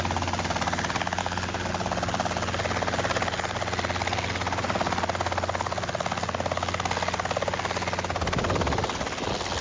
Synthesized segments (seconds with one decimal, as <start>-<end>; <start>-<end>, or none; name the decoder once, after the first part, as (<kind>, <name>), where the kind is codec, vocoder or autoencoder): 1.2-1.7 (codec, DAC)